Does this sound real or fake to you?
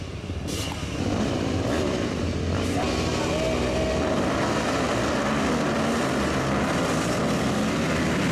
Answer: real